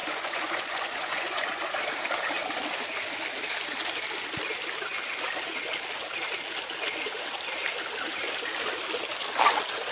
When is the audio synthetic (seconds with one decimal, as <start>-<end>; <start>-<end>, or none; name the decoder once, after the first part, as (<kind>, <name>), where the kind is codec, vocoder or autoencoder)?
0.0-1.6 (vocoder, Vocos)